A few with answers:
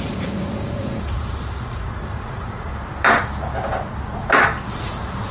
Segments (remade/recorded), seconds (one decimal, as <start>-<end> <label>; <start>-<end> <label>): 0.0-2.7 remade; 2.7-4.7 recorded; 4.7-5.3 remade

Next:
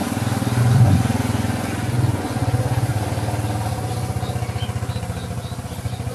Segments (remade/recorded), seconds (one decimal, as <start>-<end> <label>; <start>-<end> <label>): 0.0-0.6 recorded; 0.6-2.9 remade; 2.9-5.6 recorded; 5.6-6.1 remade

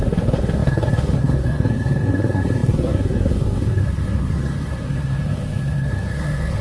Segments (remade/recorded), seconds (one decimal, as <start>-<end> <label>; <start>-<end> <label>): 0.0-6.6 remade

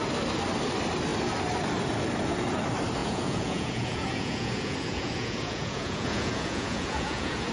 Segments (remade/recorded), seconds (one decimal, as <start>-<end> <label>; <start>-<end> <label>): 0.0-3.0 recorded; 3.0-7.5 remade

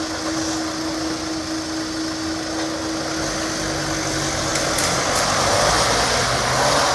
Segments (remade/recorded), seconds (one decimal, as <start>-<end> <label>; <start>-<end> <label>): 0.0-6.9 recorded

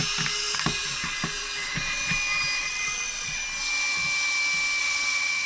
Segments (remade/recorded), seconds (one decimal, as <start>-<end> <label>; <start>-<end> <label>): 0.0-2.6 recorded; 2.6-3.4 remade; 3.4-4.8 recorded; 4.8-5.5 remade

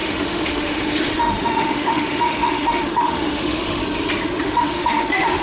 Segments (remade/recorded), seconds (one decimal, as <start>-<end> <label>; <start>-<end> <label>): 0.0-3.8 remade; 3.8-4.4 recorded; 4.4-5.4 remade

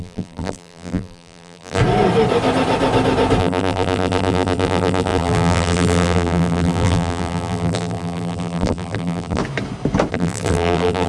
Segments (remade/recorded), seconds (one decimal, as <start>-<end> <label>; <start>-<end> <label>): 0.0-1.8 remade; 1.8-3.4 recorded; 3.4-9.4 remade; 9.4-10.1 recorded; 10.1-11.1 remade